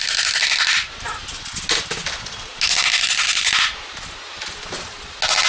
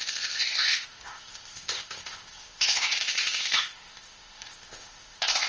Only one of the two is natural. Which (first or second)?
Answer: first